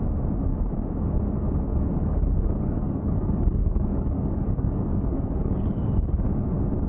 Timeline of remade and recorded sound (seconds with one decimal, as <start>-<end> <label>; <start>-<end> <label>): 0.0-1.7 recorded; 1.7-5.8 remade; 5.8-6.9 recorded